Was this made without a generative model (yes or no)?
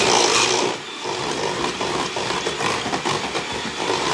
yes